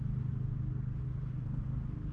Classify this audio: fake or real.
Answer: real